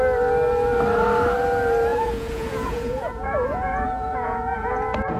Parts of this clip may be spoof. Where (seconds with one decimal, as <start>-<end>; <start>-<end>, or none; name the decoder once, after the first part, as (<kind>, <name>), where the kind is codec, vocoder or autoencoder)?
1.9-5.2 (vocoder, Vocos)